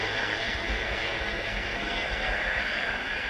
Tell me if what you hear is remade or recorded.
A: remade